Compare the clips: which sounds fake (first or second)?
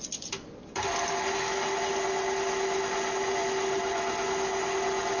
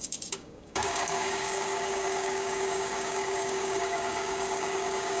second